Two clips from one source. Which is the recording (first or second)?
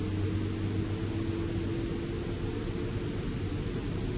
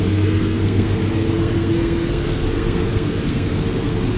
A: first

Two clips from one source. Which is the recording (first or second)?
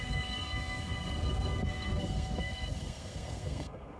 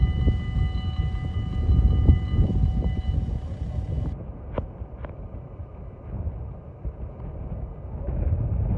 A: second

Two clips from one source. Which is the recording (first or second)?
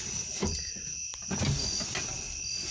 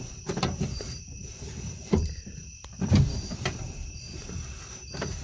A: first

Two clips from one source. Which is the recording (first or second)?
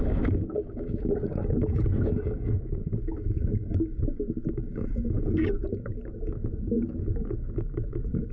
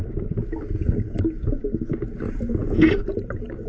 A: second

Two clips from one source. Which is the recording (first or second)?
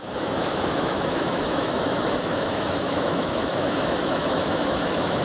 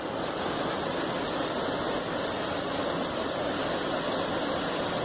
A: second